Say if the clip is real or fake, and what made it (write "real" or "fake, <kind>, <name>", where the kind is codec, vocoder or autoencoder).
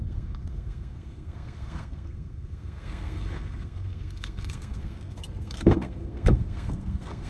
fake, codec, SNAC